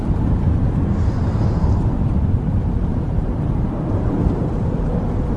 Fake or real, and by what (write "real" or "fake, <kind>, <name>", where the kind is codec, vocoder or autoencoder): fake, vocoder, BigVGAN v2